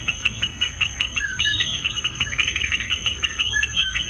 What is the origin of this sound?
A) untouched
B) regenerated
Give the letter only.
B